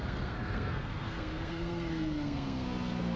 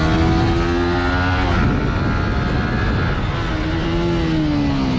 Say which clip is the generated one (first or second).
first